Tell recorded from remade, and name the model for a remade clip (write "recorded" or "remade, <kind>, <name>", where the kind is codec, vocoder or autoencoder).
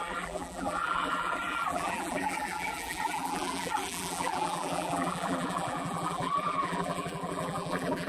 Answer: remade, vocoder, BigVGAN v2